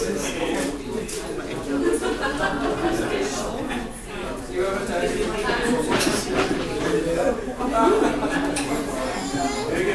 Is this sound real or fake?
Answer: real